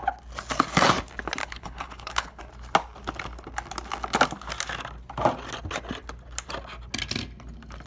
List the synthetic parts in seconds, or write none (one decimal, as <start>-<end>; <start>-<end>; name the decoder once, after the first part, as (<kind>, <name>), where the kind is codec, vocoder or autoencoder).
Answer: 1.4-2.4 (codec, HILCodec)